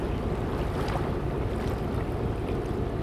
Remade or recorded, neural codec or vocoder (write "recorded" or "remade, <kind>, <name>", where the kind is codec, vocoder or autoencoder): recorded